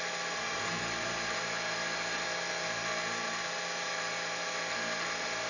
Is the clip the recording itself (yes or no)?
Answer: yes